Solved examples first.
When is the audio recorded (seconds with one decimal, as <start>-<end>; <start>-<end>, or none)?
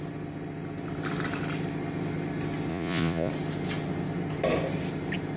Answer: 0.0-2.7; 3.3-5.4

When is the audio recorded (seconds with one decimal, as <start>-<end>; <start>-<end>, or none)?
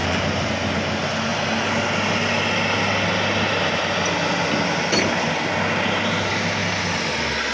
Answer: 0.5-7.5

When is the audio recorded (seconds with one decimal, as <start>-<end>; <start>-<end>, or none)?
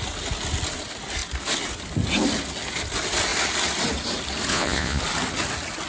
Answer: 0.0-4.5; 5.0-5.9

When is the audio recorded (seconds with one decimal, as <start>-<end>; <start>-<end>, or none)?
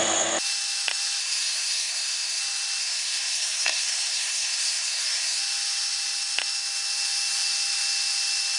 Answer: 0.0-1.2; 2.4-2.8; 5.4-8.6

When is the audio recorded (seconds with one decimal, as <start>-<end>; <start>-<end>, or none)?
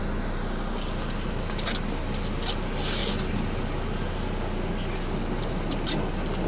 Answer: 0.0-6.5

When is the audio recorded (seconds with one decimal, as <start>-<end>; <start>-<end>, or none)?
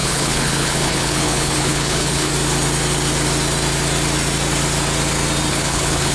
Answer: 2.3-5.5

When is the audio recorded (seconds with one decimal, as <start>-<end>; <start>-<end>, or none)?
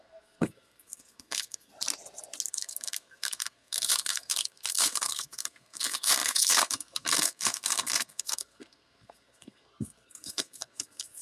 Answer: 1.7-2.5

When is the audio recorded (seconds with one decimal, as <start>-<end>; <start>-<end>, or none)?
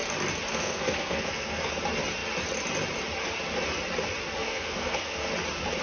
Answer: 0.0-0.5; 1.7-4.4; 5.3-5.8